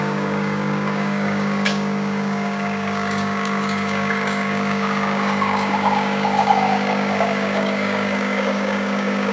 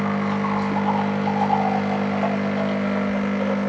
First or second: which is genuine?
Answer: second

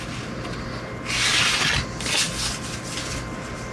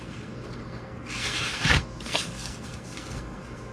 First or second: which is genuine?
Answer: first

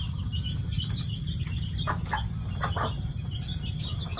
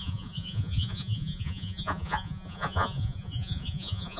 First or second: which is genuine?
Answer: first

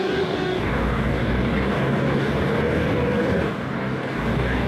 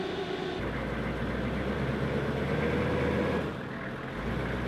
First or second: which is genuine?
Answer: second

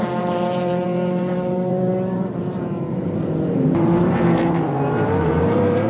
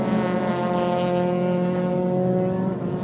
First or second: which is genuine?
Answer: second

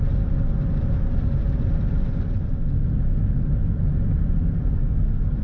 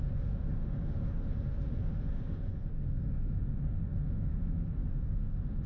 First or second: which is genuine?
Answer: first